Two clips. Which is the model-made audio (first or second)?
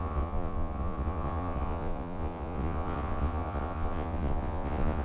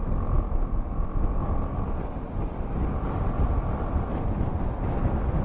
first